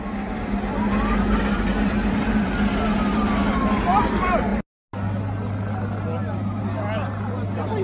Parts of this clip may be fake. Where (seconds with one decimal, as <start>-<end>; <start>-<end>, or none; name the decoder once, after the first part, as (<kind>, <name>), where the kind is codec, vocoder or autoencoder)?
none